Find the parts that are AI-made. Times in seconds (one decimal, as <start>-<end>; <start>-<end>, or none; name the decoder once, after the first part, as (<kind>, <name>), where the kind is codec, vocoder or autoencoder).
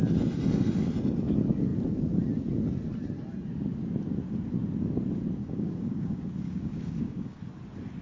5.4-7.5 (codec, DAC)